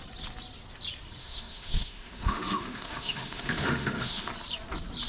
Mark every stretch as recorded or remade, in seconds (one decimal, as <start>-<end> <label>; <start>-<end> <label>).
0.0-1.2 recorded; 1.2-4.3 remade; 4.3-5.1 recorded